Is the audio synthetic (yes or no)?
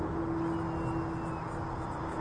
no